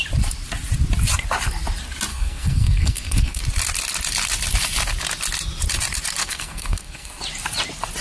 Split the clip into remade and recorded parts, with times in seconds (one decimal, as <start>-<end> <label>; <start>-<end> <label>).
0.0-2.1 recorded; 2.1-3.4 remade; 3.4-6.2 recorded; 6.2-7.2 remade; 7.2-8.0 recorded

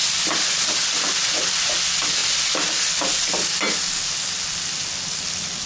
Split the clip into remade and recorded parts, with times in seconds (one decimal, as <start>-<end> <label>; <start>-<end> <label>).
0.0-5.7 recorded

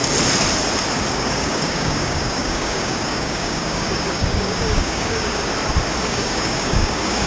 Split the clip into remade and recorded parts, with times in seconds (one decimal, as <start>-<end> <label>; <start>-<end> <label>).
0.0-1.1 recorded; 1.1-5.5 remade; 5.5-6.0 recorded; 6.0-7.3 remade

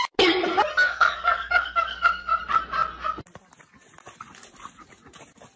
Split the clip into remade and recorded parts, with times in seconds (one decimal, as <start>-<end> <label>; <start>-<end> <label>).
0.0-0.7 recorded; 0.7-2.4 remade; 2.4-5.6 recorded

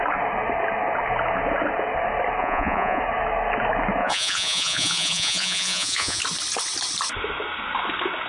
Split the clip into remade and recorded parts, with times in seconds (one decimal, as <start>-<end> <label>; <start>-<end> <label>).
0.0-2.4 recorded; 2.4-3.0 remade; 3.0-4.0 recorded; 4.0-6.2 remade; 6.2-8.3 recorded

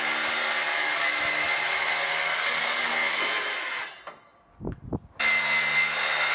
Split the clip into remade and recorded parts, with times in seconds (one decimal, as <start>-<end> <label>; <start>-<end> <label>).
0.0-0.7 recorded; 0.7-1.2 remade; 1.2-2.2 recorded; 2.2-2.9 remade; 2.9-6.3 recorded

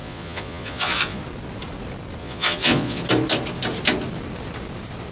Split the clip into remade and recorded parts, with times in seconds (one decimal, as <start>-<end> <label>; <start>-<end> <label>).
0.0-1.2 remade; 1.2-2.2 recorded; 2.2-3.0 remade; 3.0-5.1 recorded